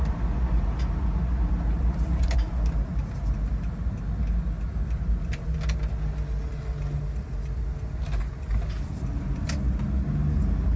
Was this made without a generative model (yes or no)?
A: yes